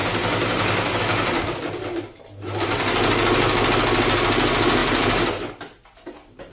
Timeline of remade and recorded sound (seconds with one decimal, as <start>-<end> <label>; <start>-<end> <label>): 0.0-6.5 recorded